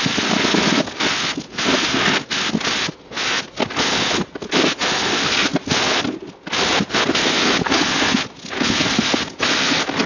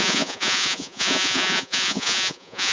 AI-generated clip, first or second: second